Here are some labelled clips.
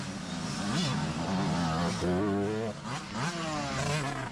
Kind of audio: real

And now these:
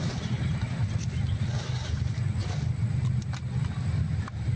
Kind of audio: real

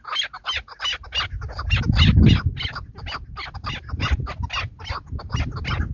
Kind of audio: real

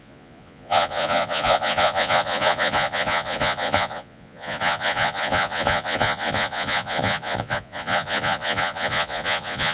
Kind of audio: fake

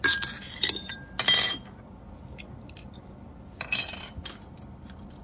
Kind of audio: real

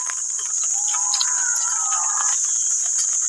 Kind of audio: real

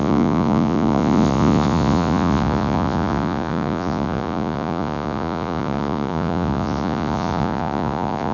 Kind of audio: fake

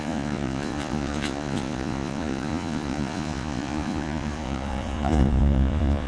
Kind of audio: fake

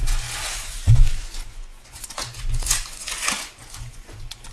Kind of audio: fake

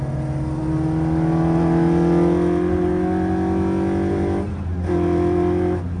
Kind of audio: real